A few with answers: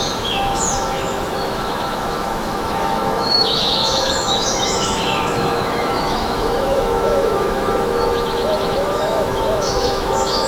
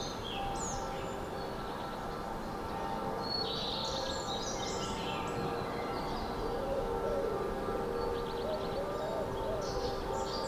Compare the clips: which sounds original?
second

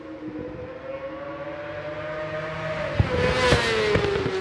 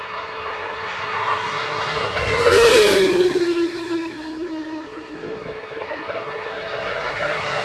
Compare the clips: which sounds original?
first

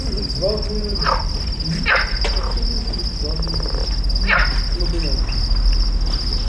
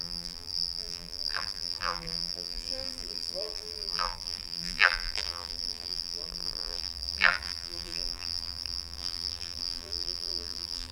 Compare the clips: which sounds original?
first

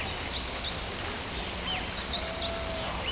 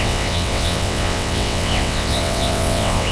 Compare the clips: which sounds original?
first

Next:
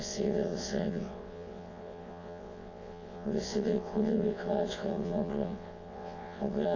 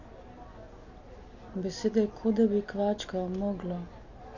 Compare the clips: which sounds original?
second